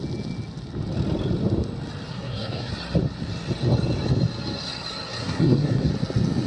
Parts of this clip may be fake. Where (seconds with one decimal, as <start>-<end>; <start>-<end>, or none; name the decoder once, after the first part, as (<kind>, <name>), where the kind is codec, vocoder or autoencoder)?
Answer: 2.1-2.7 (codec, SNAC); 5.2-5.9